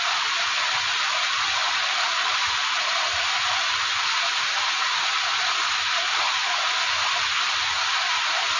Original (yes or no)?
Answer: yes